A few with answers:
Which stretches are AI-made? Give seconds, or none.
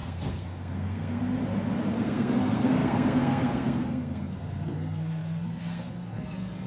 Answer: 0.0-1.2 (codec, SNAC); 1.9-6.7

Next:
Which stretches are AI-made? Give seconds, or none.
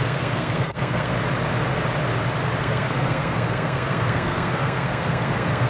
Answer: 0.0-1.1 (codec, SNAC); 2.6-5.7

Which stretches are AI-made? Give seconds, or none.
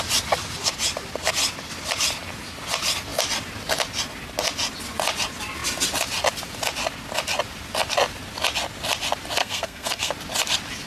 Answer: 9.4-10.1 (codec, SNAC)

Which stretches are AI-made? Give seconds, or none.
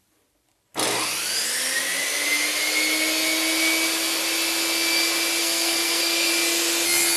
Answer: 5.4-6.3 (codec, SNAC)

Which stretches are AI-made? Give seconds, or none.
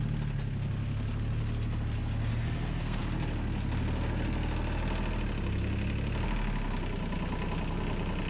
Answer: 2.3-3.0 (codec, SNAC)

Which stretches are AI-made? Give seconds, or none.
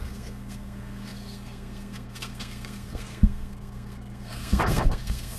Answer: 0.0-5.4 (codec, SNAC)